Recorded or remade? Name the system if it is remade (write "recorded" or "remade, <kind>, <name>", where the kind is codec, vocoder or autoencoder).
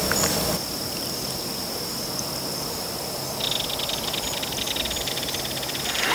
recorded